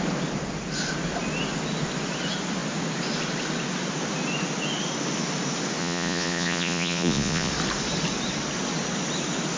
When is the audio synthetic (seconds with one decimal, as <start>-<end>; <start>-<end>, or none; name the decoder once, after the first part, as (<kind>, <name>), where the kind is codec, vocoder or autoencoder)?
5.8-7.5 (vocoder, Vocos)